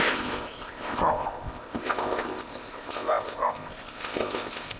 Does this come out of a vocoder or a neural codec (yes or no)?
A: yes